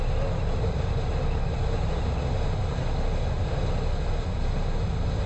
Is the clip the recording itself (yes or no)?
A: yes